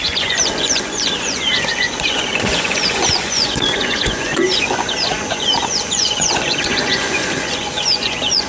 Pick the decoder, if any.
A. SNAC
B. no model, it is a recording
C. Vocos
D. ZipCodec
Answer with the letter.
C